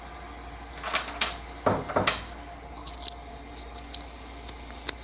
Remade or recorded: recorded